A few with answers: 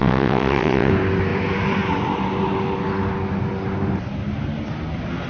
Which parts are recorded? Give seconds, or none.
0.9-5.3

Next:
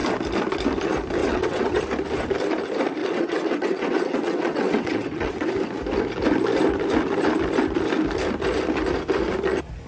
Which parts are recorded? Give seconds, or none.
0.0-1.2; 1.8-3.0; 5.5-9.9

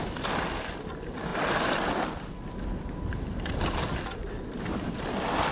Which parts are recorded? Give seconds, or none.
0.0-5.5

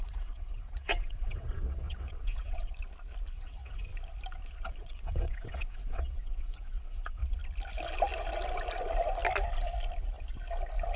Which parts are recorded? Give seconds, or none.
2.7-3.3; 3.9-4.8; 7.2-11.0

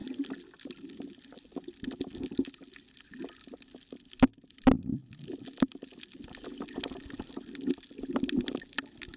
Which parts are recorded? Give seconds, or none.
0.0-9.2

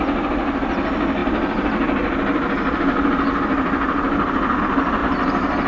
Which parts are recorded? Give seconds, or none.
0.0-5.7